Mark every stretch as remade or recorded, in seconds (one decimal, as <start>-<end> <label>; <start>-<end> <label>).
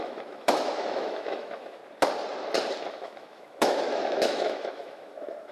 0.0-1.8 remade; 1.8-2.9 recorded; 2.9-5.5 remade